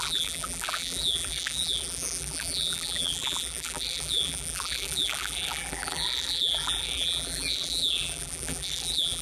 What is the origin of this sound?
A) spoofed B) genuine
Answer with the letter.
A